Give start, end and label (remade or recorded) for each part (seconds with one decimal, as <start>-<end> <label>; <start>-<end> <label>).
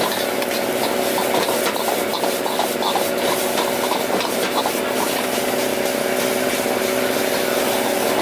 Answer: 0.0-8.2 recorded